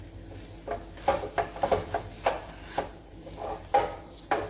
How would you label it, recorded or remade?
remade